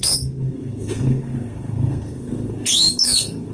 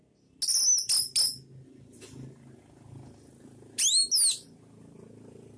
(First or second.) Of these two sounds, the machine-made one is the first